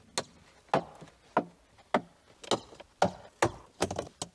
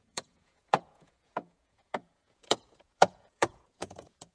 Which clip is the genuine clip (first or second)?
first